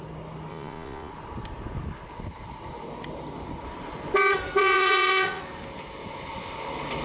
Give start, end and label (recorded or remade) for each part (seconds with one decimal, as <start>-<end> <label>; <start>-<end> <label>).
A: 0.0-0.5 recorded; 0.5-1.1 remade; 1.1-4.6 recorded; 4.6-5.4 remade; 5.4-7.0 recorded